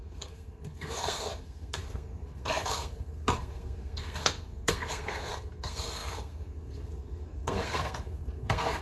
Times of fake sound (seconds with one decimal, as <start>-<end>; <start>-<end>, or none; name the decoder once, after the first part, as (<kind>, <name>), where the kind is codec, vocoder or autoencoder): 0.0-8.8 (codec, SNAC)